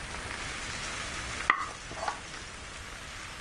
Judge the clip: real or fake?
real